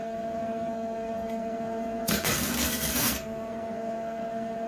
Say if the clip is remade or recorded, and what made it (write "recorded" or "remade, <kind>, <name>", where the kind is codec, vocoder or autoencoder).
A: remade, codec, SNAC